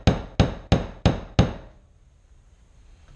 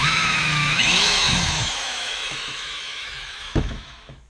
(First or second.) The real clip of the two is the first